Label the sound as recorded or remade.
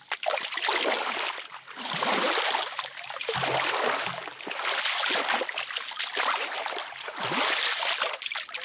recorded